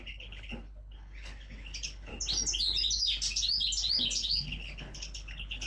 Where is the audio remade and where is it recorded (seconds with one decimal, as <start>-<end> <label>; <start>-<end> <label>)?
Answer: 0.0-2.1 remade; 2.1-4.0 recorded; 4.0-5.7 remade